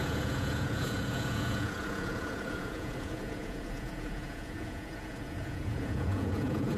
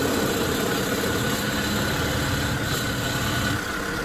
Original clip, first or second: second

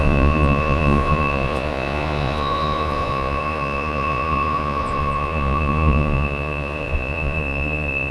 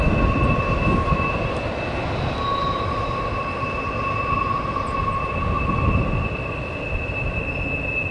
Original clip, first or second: second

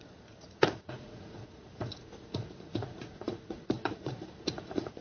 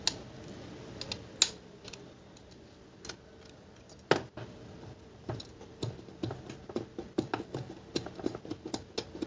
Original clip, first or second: second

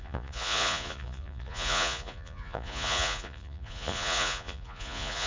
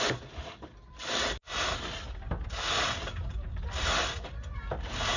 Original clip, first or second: second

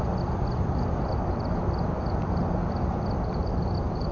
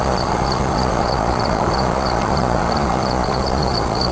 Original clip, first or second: first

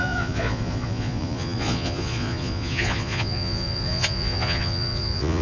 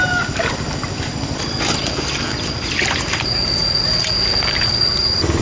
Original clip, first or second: second